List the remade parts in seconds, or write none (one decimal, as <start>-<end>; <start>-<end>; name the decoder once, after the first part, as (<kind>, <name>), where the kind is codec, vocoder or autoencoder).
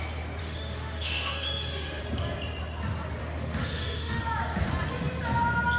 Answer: 0.4-2.0 (autoencoder, DAC-VAE); 3.2-4.2